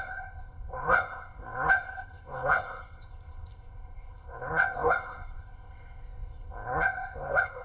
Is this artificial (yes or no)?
yes